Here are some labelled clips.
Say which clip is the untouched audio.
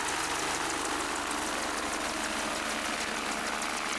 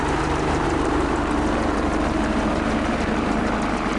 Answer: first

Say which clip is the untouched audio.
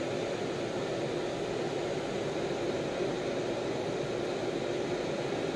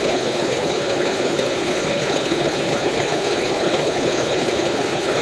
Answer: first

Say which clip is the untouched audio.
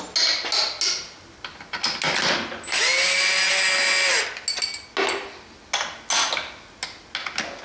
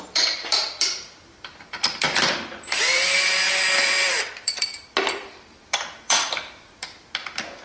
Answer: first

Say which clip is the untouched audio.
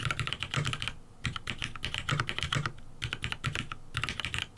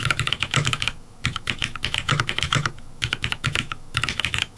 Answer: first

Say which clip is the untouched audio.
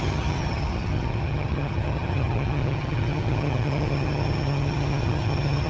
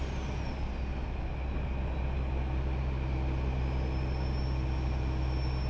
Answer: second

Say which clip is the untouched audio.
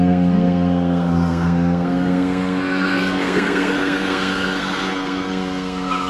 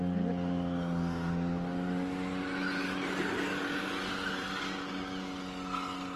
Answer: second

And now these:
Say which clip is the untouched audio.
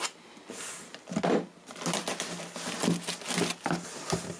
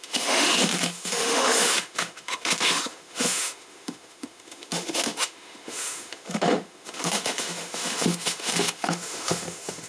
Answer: first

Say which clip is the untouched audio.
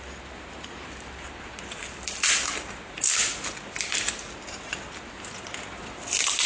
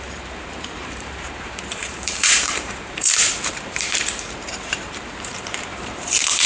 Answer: first